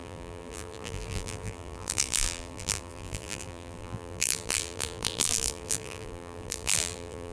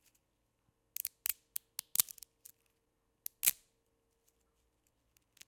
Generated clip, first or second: first